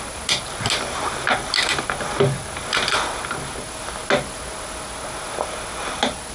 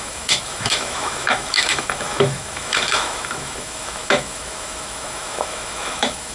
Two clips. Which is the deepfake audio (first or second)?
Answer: second